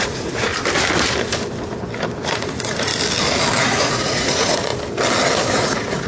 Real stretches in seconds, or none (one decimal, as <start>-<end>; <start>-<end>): 0.5-2.2; 2.9-3.6; 4.7-5.5